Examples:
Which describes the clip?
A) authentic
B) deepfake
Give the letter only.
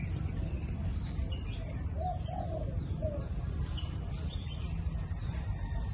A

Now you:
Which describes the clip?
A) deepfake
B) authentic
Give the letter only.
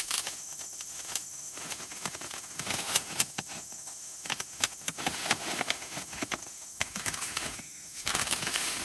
A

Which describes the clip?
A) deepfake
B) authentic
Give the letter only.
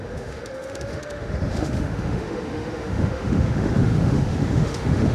A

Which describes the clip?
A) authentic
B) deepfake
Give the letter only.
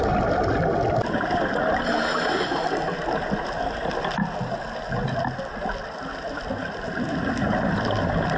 A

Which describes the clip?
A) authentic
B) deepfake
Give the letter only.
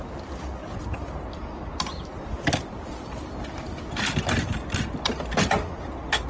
A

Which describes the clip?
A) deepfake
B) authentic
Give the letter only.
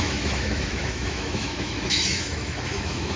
A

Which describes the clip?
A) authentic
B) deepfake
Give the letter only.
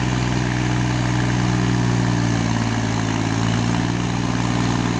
A